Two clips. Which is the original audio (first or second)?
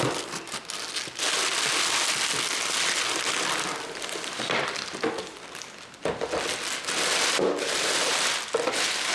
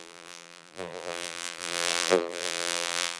first